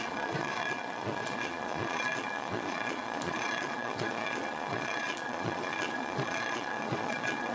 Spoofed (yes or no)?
yes